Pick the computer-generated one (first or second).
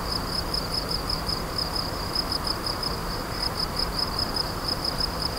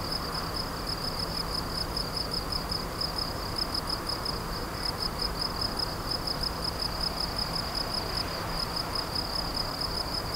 first